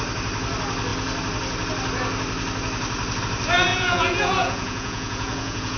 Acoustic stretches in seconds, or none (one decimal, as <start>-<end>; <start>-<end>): 0.0-3.7